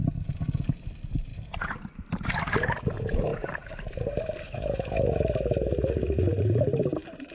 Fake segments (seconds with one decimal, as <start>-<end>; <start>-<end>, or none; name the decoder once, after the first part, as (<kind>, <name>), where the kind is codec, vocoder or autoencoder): 3.3-4.2 (vocoder, BigVGAN v2)